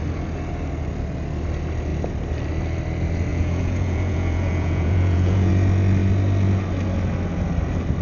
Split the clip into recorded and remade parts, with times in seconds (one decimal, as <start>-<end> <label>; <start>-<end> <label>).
0.0-3.3 recorded; 3.3-5.5 remade; 5.5-8.0 recorded